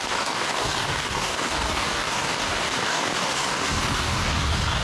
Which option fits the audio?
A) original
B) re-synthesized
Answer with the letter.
B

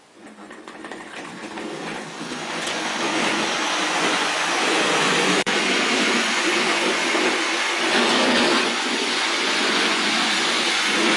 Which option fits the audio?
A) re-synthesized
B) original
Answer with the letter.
A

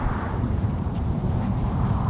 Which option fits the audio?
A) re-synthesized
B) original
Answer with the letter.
A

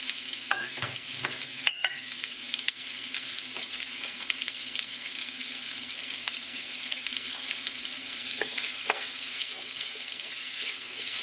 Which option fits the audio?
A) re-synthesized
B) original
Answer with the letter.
A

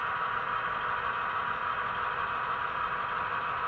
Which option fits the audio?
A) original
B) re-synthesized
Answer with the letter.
A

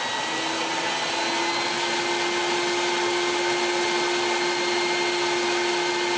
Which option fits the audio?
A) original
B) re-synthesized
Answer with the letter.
A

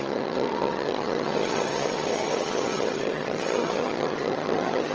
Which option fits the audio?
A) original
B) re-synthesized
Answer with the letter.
B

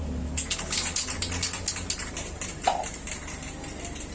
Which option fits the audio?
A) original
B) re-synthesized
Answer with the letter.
A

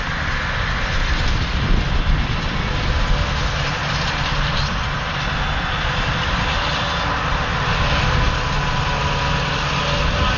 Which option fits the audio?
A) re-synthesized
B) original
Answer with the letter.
B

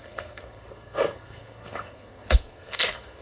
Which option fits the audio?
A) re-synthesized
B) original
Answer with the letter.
A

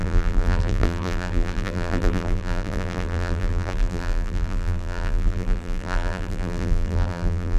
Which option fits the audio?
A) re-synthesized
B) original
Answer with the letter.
A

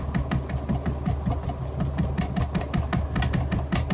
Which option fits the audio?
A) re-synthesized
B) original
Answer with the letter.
B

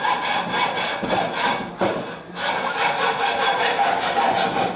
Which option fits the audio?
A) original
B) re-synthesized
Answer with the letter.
A